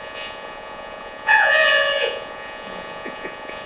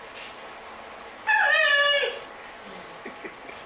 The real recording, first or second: second